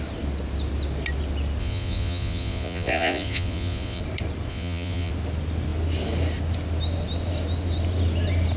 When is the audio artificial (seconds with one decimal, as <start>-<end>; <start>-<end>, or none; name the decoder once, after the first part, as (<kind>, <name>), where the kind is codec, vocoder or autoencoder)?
1.6-4.0 (vocoder, Vocos); 4.5-5.1